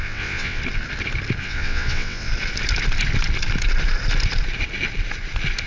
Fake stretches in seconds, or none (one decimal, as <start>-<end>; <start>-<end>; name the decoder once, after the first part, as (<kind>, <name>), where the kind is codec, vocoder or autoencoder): 0.0-0.6 (vocoder, WaveNeXt); 1.4-2.3